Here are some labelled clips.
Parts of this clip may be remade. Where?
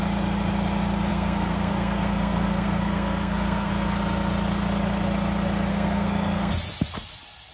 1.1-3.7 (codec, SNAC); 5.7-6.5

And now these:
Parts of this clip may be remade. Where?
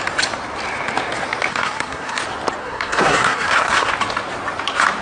1.5-2.2 (codec, SNAC); 2.6-3.9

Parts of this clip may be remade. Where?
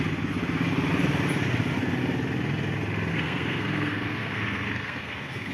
3.1-5.5 (codec, SNAC)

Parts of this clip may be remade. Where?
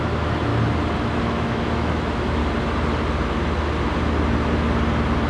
0.0-0.5 (autoencoder, DAC-VAE); 1.2-2.4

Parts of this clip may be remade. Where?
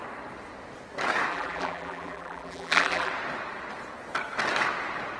1.3-3.1 (vocoder, BigVGAN v2)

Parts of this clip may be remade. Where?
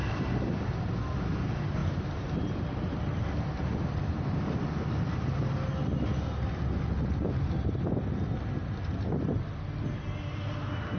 0.0-0.7 (vocoder, BigVGAN v2); 1.8-4.6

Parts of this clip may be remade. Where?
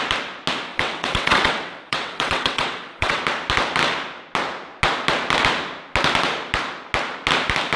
0.7-3.2 (vocoder, WaveNeXt)